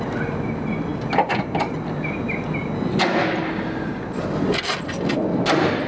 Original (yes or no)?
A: yes